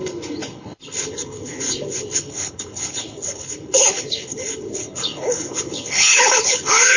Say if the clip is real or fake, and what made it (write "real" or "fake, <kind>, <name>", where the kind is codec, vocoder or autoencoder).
fake, codec, HILCodec